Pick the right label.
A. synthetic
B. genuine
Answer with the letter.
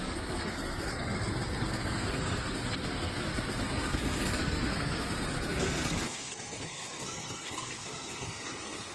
A